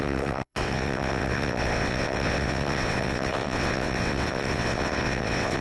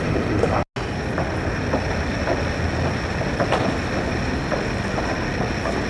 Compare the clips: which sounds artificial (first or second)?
first